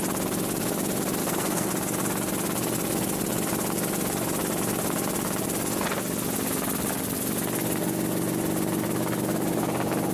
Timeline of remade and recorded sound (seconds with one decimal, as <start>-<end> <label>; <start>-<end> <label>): 0.0-1.2 recorded; 1.2-1.7 remade; 1.7-10.1 recorded